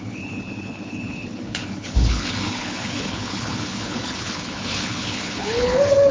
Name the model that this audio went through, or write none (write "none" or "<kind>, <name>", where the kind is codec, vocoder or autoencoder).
codec, HILCodec